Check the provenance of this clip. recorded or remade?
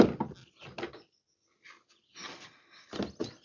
recorded